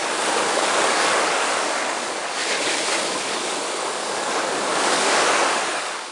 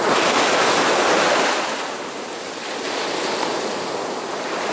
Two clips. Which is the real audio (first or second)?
second